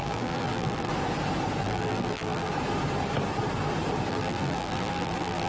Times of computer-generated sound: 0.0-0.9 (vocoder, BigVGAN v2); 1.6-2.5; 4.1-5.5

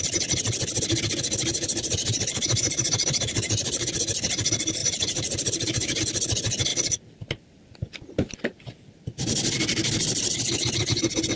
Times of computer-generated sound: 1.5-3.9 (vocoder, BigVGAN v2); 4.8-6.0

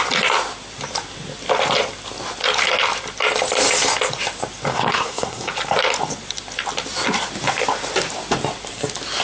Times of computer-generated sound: 4.7-5.5 (codec, SNAC)

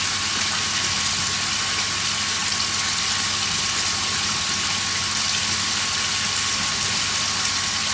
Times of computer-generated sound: none

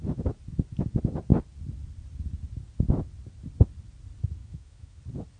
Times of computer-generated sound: 4.4-5.0 (autoencoder, DAC-VAE)